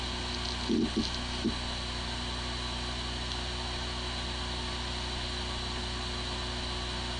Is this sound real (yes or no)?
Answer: yes